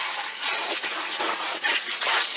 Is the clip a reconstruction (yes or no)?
yes